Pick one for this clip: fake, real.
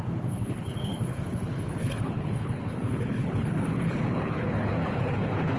fake